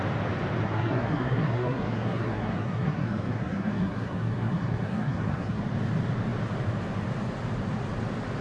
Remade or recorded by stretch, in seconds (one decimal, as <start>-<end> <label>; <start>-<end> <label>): 0.0-0.6 recorded; 0.6-5.6 remade; 5.6-8.4 recorded